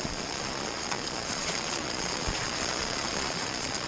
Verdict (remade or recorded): remade